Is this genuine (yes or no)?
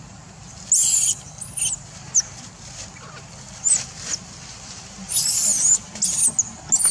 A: yes